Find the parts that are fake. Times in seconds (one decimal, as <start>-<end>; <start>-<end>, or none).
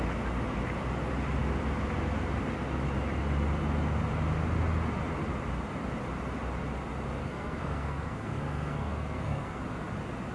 7.2-9.6